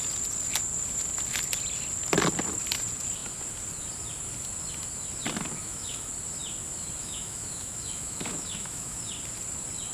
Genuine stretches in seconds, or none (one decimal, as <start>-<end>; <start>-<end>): 0.0-5.6; 6.1-7.0; 9.0-9.9